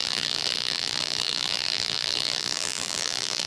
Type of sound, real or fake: fake